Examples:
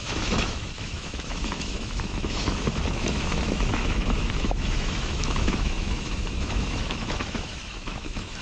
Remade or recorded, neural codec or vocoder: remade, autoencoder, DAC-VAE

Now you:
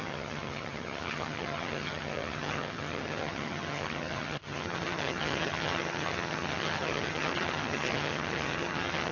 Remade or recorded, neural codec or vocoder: remade, vocoder, HiFi-GAN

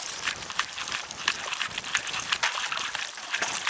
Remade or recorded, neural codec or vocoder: recorded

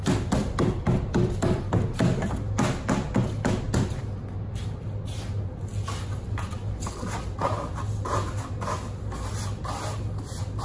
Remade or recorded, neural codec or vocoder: recorded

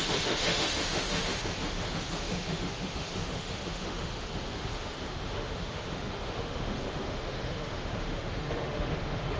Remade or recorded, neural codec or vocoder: remade, autoencoder, DAC-VAE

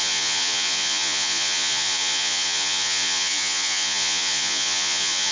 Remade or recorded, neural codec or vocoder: remade, vocoder, Vocos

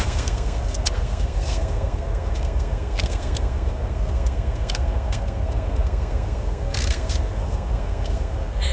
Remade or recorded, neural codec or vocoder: remade, codec, SNAC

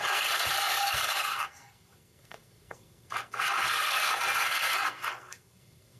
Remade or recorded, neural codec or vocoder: remade, codec, SNAC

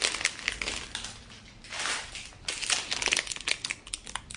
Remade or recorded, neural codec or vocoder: recorded